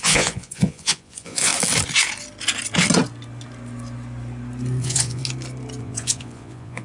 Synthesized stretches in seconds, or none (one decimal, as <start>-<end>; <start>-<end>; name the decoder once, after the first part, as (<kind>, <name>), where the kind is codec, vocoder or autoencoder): 0.0-1.5 (vocoder, Vocos); 4.8-5.2; 5.8-6.8